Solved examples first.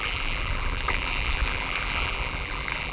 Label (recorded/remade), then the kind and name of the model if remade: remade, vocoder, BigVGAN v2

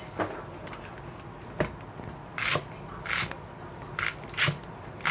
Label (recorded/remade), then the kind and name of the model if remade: recorded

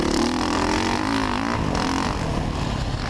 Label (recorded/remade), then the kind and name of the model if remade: recorded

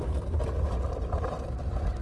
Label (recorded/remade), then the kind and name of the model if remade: recorded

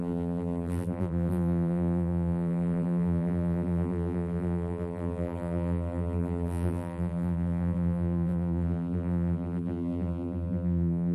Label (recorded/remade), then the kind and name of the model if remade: remade, vocoder, BigVGAN v2